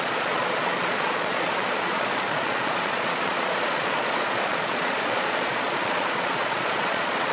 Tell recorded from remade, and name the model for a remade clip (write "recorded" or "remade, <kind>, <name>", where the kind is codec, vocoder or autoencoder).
remade, vocoder, Vocos